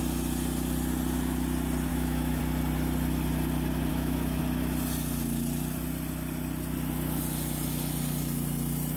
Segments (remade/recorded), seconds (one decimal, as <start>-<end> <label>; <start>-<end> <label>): 0.0-1.9 recorded; 1.9-2.4 remade; 2.4-3.9 recorded; 3.9-4.4 remade; 4.4-9.0 recorded